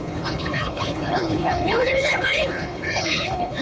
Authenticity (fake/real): fake